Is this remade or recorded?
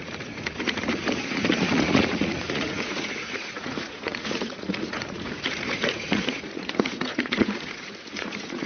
remade